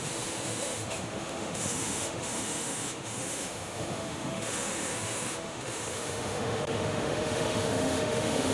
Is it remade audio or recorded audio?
remade